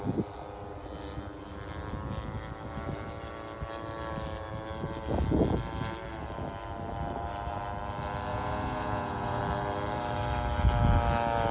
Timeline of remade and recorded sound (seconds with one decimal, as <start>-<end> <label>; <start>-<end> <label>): 0.0-8.3 recorded; 8.3-9.4 remade; 9.4-11.5 recorded